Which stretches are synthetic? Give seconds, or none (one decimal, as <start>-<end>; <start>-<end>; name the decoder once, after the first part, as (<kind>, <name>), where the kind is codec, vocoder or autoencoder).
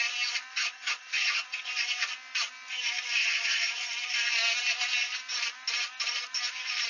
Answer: 0.5-1.7 (vocoder, HiFi-GAN); 3.2-3.9